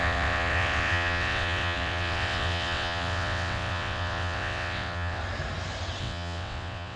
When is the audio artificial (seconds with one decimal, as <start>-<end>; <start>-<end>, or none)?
0.0-5.2; 6.0-7.0